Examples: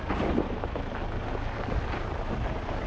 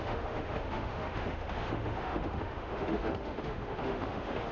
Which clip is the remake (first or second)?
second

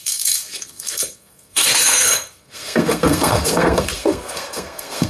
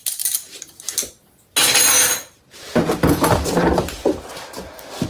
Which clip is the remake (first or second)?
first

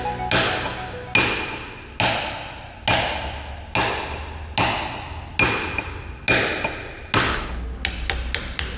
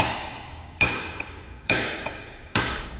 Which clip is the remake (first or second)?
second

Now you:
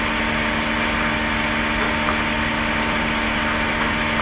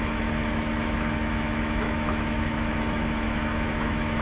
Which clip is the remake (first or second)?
second